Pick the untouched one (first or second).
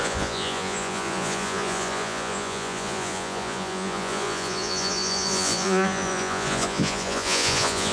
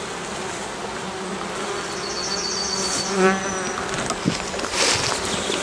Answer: second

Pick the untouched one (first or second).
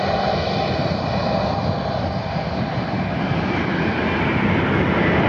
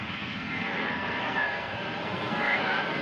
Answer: first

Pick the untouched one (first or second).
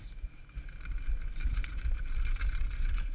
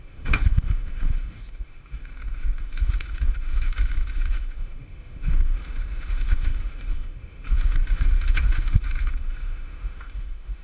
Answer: first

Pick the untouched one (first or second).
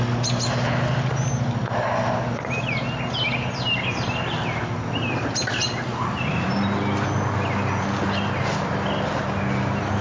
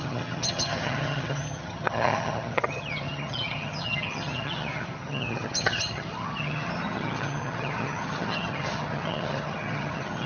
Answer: first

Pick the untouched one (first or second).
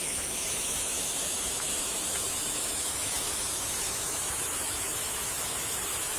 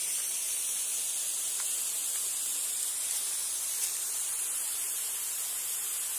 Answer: second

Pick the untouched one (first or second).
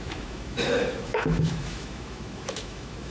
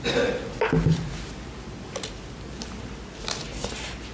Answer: second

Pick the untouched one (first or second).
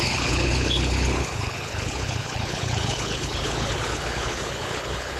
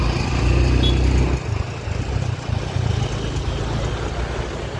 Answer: second